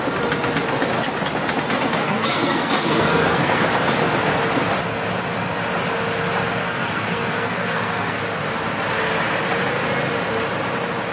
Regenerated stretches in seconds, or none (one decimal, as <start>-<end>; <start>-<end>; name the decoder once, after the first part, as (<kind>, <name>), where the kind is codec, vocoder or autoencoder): 2.0-3.6 (codec, SNAC); 6.6-8.2